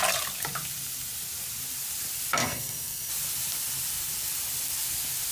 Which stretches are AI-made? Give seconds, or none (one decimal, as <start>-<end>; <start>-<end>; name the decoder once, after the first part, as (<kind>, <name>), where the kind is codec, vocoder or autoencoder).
2.4-3.1 (codec, SNAC)